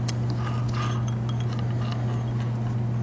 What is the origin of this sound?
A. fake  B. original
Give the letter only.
B